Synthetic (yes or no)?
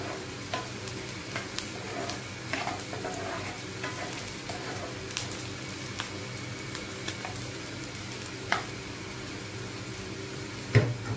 yes